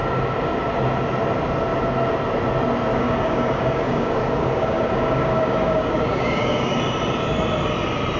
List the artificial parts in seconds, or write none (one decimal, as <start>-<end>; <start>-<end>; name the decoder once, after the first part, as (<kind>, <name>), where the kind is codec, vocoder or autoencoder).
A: 2.9-6.8 (codec, DAC)

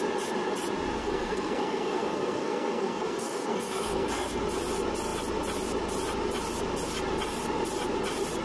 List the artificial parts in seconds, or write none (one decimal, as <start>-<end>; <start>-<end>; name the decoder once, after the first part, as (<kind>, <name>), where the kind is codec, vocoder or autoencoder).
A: 1.0-4.4 (codec, SNAC)

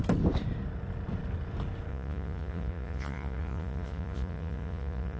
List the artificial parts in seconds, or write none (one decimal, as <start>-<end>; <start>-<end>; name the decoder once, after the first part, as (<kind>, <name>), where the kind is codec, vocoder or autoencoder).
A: 1.9-5.2 (vocoder, Vocos)